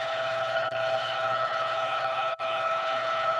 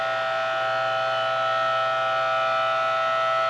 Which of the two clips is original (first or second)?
second